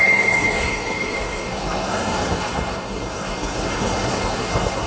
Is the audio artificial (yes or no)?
yes